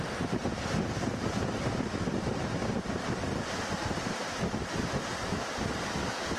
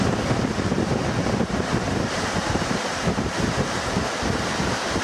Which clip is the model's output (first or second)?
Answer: second